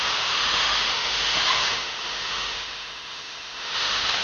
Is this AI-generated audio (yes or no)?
yes